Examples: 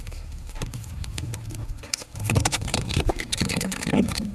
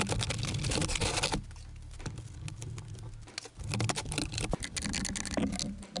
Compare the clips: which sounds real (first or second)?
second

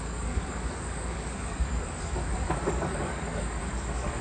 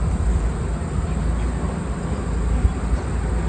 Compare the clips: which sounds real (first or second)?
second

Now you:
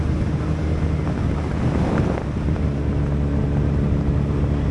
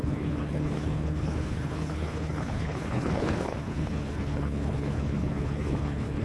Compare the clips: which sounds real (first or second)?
first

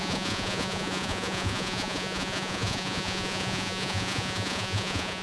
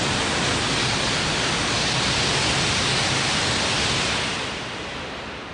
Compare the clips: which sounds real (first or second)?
second